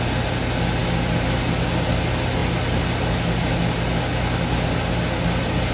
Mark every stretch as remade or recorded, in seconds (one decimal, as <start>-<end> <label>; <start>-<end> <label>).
0.0-5.7 recorded